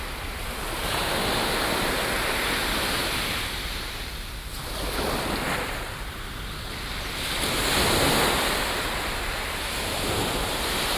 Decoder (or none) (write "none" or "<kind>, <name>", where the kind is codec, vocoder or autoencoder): none